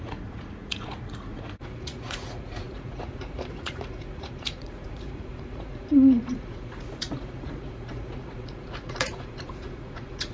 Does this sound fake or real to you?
fake